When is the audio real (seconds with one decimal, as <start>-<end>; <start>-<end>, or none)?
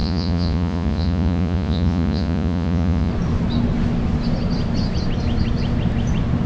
3.1-6.5